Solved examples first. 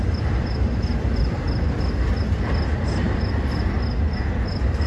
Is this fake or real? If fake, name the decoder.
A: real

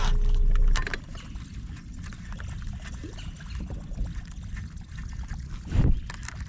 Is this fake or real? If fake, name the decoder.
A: real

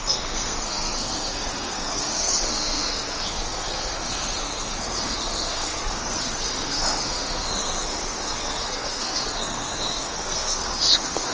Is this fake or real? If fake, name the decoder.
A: fake, codec, SNAC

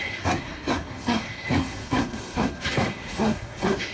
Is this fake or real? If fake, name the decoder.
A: fake, codec, SNAC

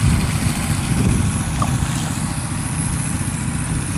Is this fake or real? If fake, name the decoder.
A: real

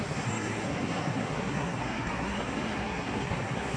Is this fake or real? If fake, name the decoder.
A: fake, codec, SNAC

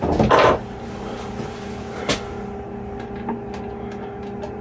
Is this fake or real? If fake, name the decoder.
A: real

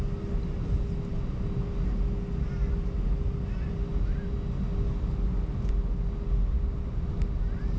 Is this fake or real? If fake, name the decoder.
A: real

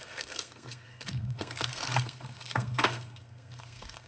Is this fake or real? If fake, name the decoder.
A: fake, codec, SNAC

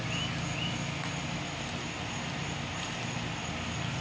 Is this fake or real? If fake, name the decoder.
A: real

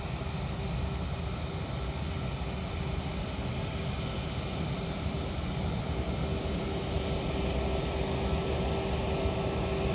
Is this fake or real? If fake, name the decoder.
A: real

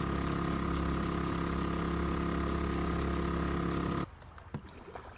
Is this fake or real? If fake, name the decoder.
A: real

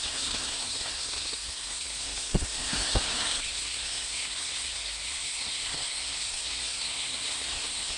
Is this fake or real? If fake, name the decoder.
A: fake, codec, SNAC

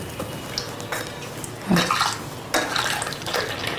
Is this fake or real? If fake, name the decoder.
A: real